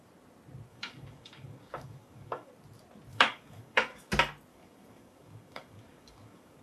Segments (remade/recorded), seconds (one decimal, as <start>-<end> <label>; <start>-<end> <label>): 0.0-0.7 recorded; 0.7-2.5 remade; 2.5-3.1 recorded; 3.1-4.1 remade; 4.1-4.5 recorded; 4.5-6.6 remade